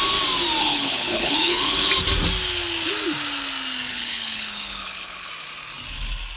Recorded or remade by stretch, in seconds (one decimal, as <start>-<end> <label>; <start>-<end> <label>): 0.0-0.6 recorded; 0.6-1.9 remade; 1.9-3.9 recorded; 3.9-5.3 remade; 5.3-6.4 recorded